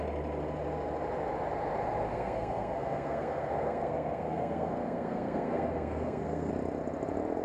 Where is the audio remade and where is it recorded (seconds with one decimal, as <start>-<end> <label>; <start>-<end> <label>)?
0.0-2.1 recorded; 2.1-6.5 remade; 6.5-7.4 recorded